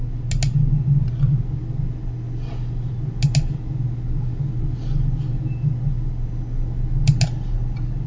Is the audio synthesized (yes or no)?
no